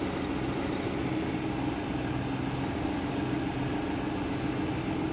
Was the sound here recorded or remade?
recorded